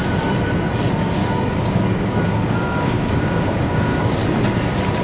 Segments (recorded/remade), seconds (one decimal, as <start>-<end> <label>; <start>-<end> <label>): 0.0-1.2 recorded; 1.2-4.2 remade; 4.2-5.0 recorded